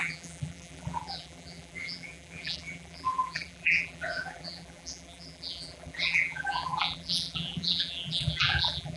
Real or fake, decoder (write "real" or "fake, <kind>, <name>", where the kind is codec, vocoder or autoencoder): fake, vocoder, BigVGAN v2